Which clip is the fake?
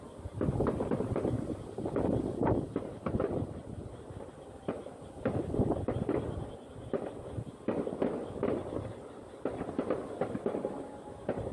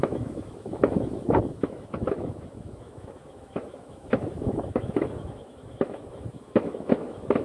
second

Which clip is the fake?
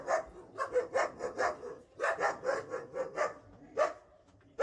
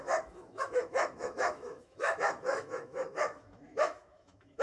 second